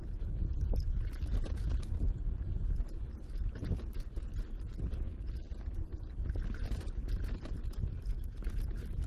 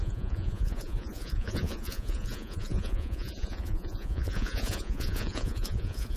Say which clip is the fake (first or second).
second